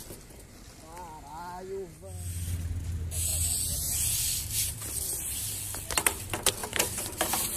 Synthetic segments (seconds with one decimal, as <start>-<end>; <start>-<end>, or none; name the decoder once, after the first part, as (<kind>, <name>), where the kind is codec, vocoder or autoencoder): 4.3-5.6 (vocoder, BigVGAN v2); 6.6-7.6